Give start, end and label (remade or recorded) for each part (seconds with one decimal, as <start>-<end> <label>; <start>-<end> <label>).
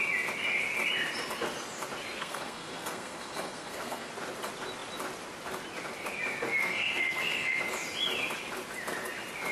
0.0-2.2 recorded; 2.2-4.1 remade; 4.1-6.6 recorded; 6.6-7.6 remade; 7.6-9.5 recorded